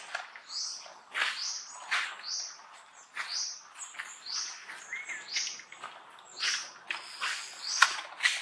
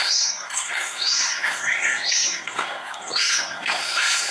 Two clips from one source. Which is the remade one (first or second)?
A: second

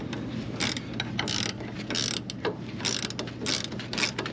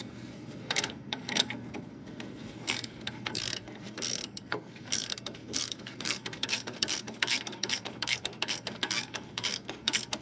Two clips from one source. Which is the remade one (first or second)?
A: second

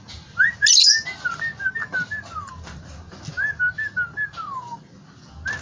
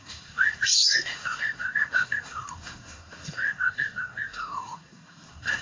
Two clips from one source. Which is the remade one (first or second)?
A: second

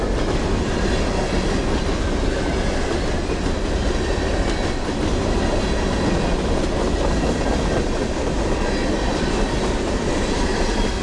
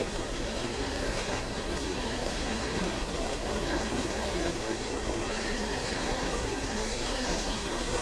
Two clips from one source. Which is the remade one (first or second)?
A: second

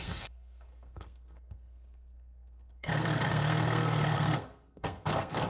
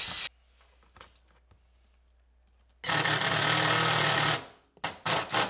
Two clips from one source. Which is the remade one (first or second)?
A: first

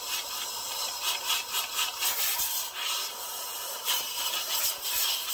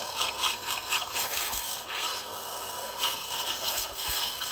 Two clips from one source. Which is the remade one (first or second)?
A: second